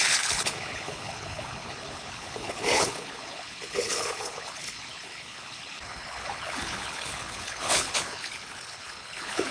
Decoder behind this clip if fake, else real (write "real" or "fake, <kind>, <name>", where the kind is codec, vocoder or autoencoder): fake, codec, HILCodec